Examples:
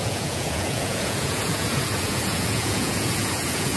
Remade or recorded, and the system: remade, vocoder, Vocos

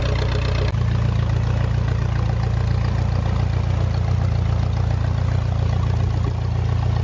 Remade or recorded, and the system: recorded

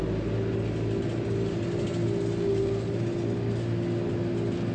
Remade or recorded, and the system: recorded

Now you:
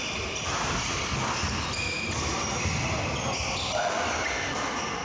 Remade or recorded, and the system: recorded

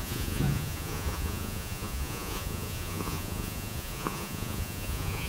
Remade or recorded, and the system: remade, vocoder, Vocos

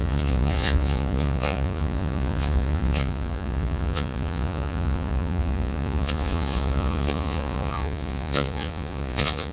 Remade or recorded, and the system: remade, vocoder, Vocos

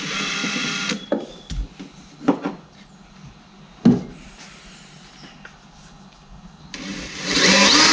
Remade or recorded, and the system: recorded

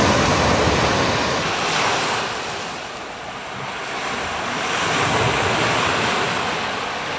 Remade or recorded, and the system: recorded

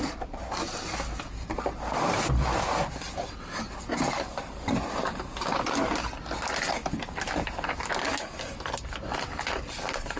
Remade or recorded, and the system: recorded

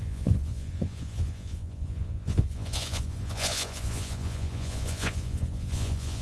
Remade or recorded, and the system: remade, vocoder, Vocos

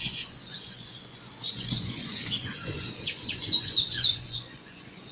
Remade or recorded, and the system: remade, vocoder, Vocos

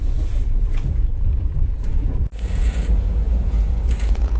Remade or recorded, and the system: remade, vocoder, Vocos